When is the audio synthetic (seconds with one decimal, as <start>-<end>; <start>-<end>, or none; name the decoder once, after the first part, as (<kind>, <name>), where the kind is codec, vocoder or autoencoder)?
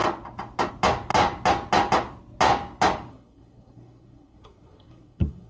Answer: 3.1-5.5 (codec, SNAC)